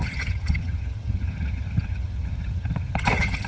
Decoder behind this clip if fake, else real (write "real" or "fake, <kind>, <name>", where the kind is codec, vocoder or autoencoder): fake, vocoder, HiFi-GAN